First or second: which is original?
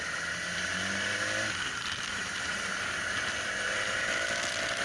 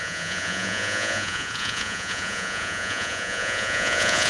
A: first